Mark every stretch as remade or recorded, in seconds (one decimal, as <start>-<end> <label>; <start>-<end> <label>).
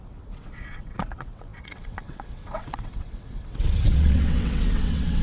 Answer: 0.0-5.2 remade